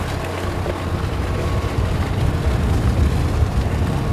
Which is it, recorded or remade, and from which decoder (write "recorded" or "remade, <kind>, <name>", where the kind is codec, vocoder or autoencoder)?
recorded